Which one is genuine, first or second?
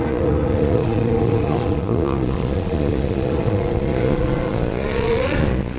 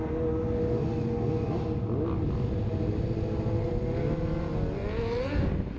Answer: second